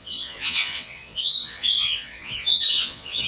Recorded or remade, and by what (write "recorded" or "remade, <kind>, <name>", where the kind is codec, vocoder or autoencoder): remade, vocoder, Vocos